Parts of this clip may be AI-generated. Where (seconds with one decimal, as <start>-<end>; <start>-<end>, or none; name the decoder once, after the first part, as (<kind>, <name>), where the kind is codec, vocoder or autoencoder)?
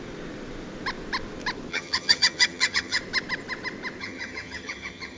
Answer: 1.7-3.0 (vocoder, HiFi-GAN); 4.0-5.2